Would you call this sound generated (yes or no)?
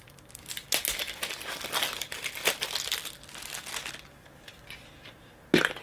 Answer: no